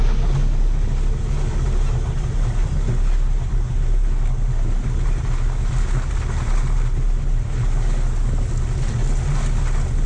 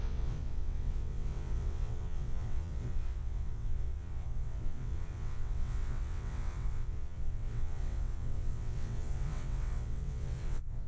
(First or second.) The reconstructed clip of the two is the second